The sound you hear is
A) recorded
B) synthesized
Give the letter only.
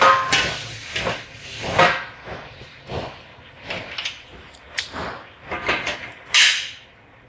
A